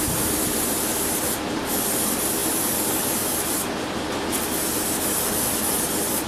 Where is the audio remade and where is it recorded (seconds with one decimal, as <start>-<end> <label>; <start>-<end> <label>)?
0.0-6.3 recorded